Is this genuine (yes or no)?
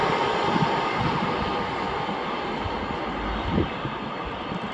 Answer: yes